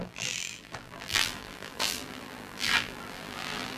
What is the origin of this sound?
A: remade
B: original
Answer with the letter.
A